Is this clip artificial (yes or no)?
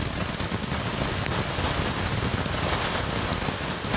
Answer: no